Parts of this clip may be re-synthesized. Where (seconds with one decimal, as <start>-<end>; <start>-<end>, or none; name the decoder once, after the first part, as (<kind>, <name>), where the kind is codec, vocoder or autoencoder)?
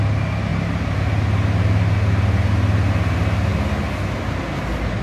none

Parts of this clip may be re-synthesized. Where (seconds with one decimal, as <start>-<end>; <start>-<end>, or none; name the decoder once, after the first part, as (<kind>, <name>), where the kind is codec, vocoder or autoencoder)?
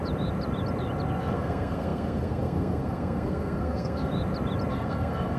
1.2-4.1 (codec, SNAC); 4.7-5.4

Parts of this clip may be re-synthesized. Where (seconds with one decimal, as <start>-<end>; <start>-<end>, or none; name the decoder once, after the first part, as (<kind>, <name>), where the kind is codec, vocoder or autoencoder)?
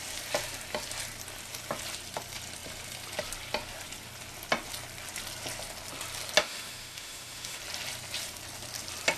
6.4-7.6 (autoencoder, DAC-VAE)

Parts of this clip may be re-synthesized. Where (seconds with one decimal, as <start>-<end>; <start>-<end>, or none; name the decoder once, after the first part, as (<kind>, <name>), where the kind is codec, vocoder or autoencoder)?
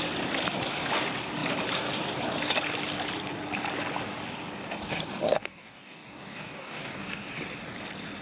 5.3-7.3 (codec, DAC)